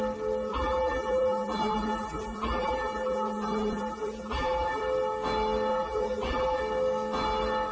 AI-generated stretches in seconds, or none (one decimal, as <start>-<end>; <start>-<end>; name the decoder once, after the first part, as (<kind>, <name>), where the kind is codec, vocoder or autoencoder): 0.5-4.8 (vocoder, BigVGAN v2); 5.7-6.6